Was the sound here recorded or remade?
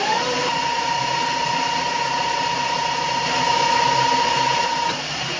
remade